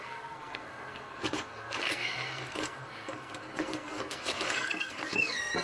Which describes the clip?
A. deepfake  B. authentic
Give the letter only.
A